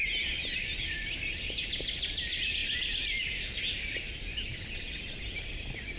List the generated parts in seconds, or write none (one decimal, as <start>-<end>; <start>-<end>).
none